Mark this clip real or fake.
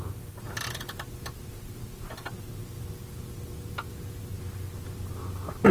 real